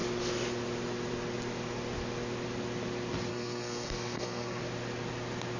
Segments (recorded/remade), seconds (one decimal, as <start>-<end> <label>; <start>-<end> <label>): 0.0-3.3 recorded; 3.3-4.6 remade; 4.6-5.6 recorded